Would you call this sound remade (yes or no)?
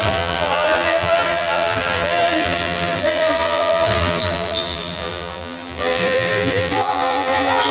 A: yes